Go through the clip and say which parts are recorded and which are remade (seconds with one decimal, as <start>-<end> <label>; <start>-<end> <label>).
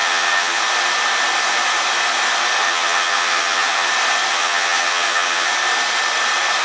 0.0-0.6 remade; 0.6-2.6 recorded; 2.6-3.9 remade; 3.9-4.3 recorded; 4.3-5.5 remade; 5.5-6.6 recorded